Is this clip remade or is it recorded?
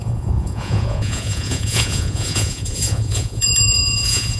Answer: remade